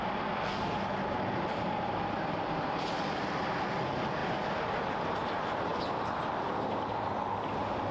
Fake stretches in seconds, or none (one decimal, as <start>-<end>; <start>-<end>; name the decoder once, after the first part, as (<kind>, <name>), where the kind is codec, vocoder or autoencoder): 1.5-3.8 (vocoder, BigVGAN v2); 4.2-5.0

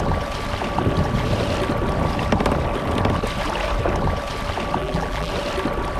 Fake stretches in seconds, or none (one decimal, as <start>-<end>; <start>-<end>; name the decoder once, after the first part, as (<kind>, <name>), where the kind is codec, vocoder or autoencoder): 4.8-5.3 (vocoder, BigVGAN v2)

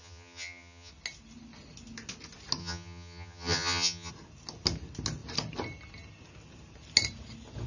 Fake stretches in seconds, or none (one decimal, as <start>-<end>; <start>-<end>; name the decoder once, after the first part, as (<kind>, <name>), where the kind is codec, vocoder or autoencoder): 0.0-0.9 (vocoder, HiFi-GAN); 2.6-4.1

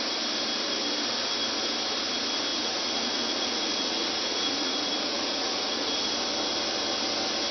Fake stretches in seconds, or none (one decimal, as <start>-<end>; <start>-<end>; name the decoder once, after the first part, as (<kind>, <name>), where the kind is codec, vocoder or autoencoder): 2.5-6.1 (vocoder, Vocos)

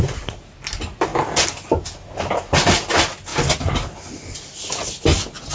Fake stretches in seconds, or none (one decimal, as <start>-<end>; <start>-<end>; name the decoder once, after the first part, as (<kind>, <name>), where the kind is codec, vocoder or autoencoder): none

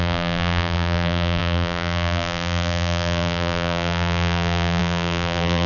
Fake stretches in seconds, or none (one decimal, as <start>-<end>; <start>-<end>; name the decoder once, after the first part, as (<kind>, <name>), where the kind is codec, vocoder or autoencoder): 0.0-5.7 (vocoder, BigVGAN v2)

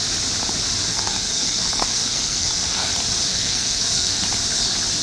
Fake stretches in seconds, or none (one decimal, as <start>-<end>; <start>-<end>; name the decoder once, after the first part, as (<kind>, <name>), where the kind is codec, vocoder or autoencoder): 0.9-2.9 (codec, SNAC); 3.3-4.2